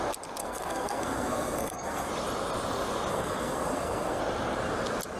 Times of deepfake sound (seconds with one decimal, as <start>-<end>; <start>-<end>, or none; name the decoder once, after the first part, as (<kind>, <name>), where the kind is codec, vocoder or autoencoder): 0.4-2.1 (codec, SNAC); 3.1-4.2